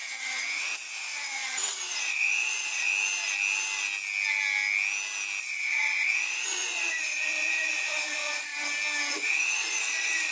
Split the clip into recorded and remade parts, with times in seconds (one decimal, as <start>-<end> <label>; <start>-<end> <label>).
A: 0.0-2.9 remade; 2.9-5.4 recorded; 5.4-8.5 remade; 8.5-9.1 recorded; 9.1-10.3 remade